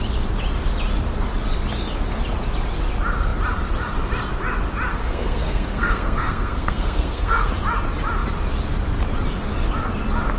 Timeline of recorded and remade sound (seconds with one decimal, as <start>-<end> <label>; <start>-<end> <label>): 0.0-4.9 recorded; 4.9-7.5 remade; 7.5-10.4 recorded